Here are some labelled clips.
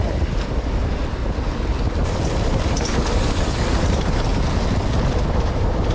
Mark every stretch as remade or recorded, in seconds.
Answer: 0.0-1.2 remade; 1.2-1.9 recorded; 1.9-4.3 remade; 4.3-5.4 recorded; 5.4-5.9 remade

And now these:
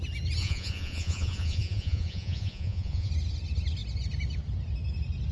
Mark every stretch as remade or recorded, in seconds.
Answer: 0.0-0.4 recorded; 0.4-3.1 remade; 3.1-5.3 recorded

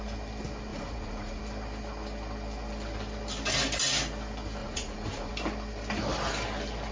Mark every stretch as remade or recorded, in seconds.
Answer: 0.0-0.7 recorded; 0.7-1.4 remade; 1.4-4.6 recorded; 4.6-5.3 remade; 5.3-6.9 recorded

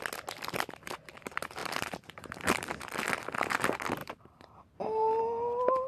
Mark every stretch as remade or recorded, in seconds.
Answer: 0.0-1.6 recorded; 1.6-2.7 remade; 2.7-4.0 recorded; 4.0-5.2 remade; 5.2-5.9 recorded

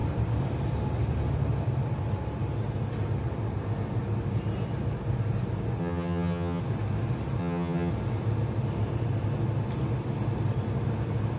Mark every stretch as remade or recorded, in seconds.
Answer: 0.0-5.8 recorded; 5.8-6.6 remade; 6.6-7.4 recorded; 7.4-7.9 remade; 7.9-11.4 recorded

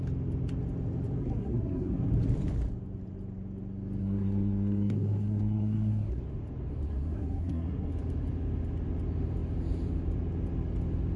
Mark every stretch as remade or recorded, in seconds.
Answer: 0.0-1.2 recorded; 1.2-2.0 remade; 2.0-4.0 recorded; 4.0-6.2 remade; 6.2-6.9 recorded; 6.9-7.9 remade; 7.9-11.2 recorded

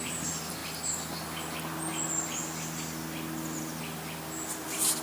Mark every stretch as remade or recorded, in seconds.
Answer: 0.0-5.0 recorded